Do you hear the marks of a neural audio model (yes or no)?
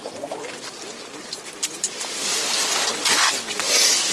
no